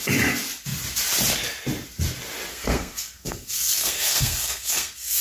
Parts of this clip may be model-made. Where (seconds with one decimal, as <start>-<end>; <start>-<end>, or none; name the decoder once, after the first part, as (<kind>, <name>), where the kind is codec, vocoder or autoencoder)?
2.5-5.2 (codec, SNAC)